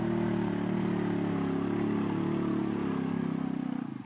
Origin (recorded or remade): recorded